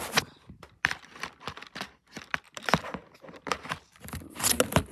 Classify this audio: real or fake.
real